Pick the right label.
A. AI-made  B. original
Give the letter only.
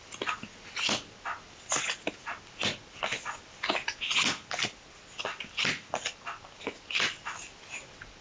B